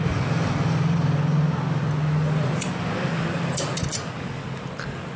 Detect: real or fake real